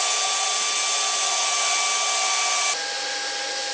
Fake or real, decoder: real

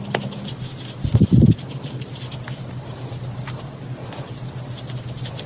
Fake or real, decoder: real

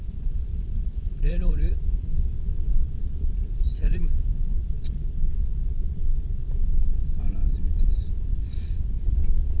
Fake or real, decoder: fake, vocoder, Vocos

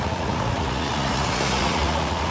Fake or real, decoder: fake, vocoder, Vocos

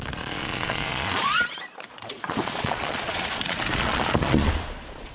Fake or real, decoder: fake, vocoder, Vocos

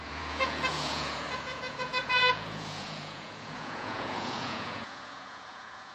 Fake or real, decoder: fake, vocoder, Vocos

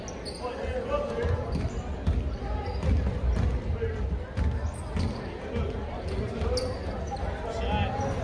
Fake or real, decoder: real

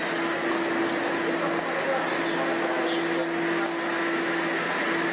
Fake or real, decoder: real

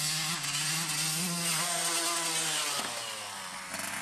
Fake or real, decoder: real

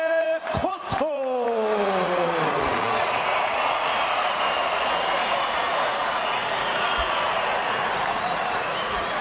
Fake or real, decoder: fake, vocoder, Vocos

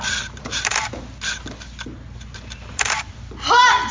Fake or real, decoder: real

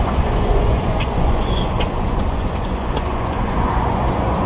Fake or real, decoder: fake, vocoder, Vocos